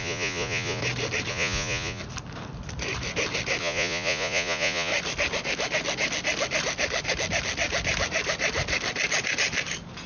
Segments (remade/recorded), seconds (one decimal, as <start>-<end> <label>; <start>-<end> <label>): 0.0-0.8 remade; 0.8-1.3 recorded; 1.3-2.0 remade; 2.0-3.6 recorded; 3.6-4.9 remade; 4.9-10.1 recorded